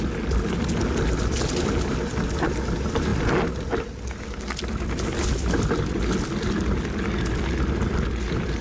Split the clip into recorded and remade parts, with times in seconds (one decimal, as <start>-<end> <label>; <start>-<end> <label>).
0.0-8.6 recorded